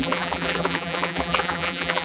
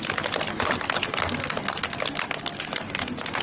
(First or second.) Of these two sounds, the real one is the second